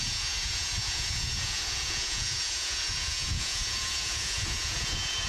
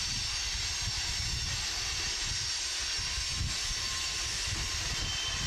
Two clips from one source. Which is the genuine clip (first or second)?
second